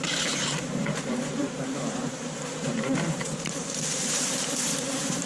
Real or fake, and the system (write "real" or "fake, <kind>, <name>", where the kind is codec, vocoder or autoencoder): fake, vocoder, BigVGAN v2